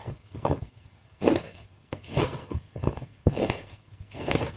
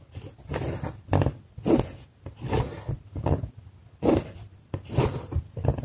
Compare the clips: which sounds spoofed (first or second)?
first